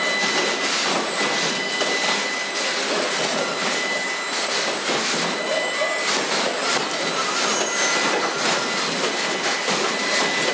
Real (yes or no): yes